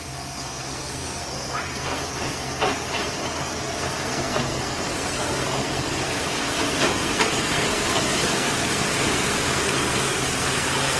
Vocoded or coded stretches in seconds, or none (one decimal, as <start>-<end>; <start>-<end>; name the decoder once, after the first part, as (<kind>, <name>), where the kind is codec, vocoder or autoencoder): 0.0-11.0 (codec, SNAC)